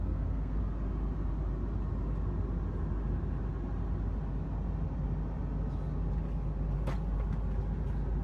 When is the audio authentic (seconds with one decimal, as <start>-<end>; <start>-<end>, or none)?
0.6-8.2